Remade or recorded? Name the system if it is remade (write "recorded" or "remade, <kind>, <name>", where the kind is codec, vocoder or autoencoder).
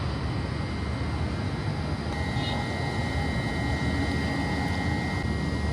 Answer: recorded